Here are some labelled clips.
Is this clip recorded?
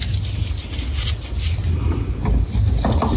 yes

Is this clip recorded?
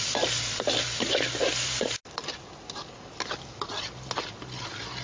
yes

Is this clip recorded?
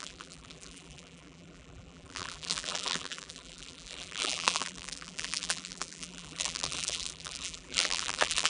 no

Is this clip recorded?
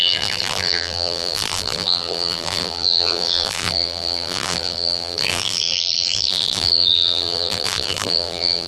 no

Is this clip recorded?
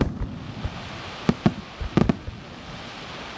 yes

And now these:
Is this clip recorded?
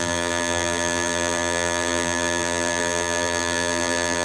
no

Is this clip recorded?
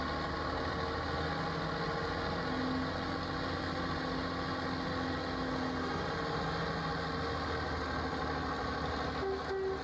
yes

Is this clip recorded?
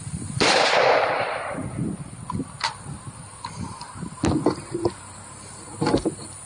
yes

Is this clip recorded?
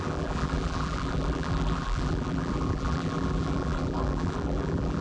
no